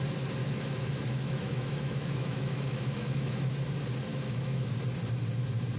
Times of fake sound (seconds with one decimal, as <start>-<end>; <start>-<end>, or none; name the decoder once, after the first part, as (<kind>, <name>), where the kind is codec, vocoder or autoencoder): 0.4-3.5 (autoencoder, DAC-VAE); 4.1-4.7